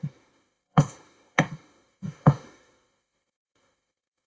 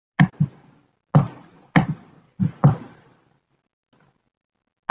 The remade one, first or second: first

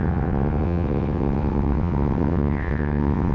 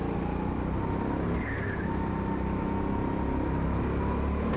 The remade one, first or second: first